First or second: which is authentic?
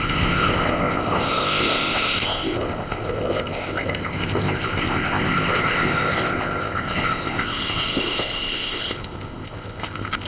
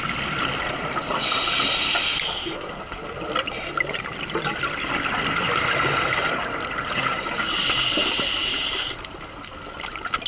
second